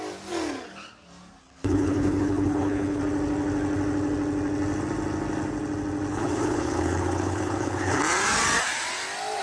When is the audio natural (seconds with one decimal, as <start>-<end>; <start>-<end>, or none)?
0.0-1.4; 3.0-6.1; 8.0-9.4